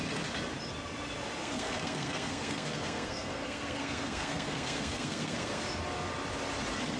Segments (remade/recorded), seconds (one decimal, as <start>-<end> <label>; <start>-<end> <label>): 0.0-1.4 recorded; 1.4-5.6 remade; 5.6-7.0 recorded